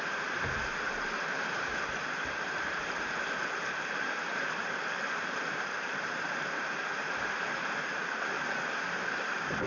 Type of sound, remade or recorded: remade